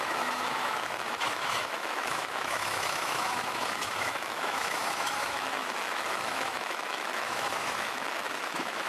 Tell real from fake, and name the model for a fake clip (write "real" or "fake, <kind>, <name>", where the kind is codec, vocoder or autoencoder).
fake, autoencoder, DAC-VAE